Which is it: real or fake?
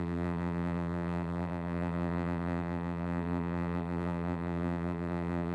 fake